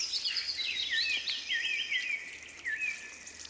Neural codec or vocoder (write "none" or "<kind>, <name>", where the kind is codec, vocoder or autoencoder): none